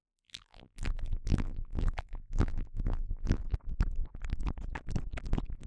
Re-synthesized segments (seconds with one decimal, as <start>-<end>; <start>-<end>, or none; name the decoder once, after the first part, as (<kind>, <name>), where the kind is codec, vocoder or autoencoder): 0.0-3.4 (vocoder, BigVGAN v2)